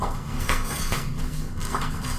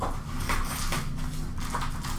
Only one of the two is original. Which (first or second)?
second